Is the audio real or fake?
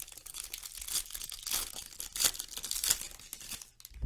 real